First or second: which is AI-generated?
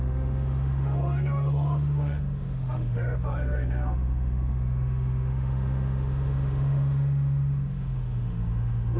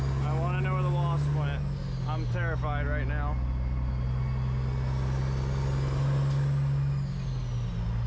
first